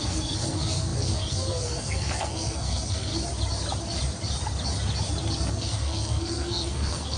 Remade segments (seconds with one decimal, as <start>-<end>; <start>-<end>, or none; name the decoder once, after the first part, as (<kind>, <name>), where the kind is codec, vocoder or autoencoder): 0.0-3.1 (codec, SNAC); 5.5-7.2